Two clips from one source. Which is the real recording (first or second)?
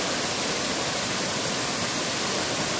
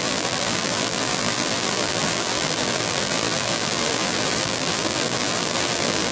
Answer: first